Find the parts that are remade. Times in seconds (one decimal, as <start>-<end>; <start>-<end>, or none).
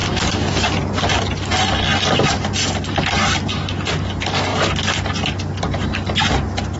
0.0-1.2; 4.5-5.1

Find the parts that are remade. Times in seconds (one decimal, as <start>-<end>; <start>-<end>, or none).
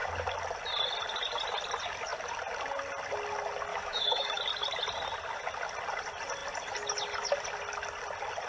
3.7-4.4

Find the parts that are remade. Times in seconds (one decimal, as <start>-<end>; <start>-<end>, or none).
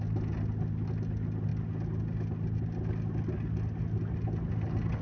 none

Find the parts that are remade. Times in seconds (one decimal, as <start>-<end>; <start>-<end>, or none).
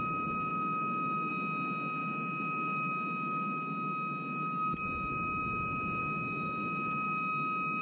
0.5-1.3; 6.0-7.3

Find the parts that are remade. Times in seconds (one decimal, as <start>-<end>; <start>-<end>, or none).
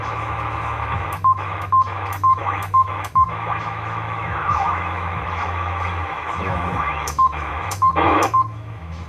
0.0-9.1